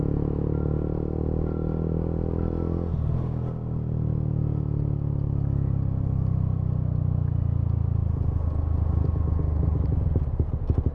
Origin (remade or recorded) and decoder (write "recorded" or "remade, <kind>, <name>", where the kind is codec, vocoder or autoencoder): recorded